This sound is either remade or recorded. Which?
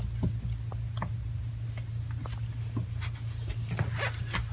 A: recorded